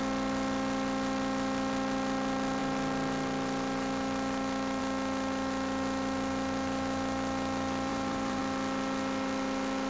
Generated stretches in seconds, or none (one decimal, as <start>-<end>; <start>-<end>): 7.9-8.4